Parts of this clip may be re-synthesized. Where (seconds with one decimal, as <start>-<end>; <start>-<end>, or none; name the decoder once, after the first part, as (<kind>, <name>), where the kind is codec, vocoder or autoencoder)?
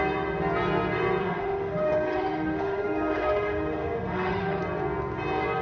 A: 1.2-4.6 (autoencoder, DAC-VAE)